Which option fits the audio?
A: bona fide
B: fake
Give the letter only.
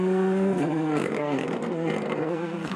B